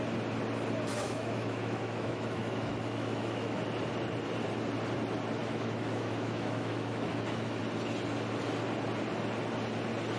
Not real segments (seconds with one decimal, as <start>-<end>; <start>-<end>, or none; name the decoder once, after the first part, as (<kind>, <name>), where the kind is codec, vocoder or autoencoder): 0.9-3.6 (autoencoder, DAC-VAE); 5.4-7.6